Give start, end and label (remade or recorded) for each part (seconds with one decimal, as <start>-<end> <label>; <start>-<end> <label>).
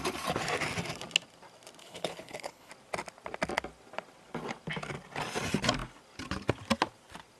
0.0-1.8 recorded; 1.8-2.7 remade; 2.7-7.4 recorded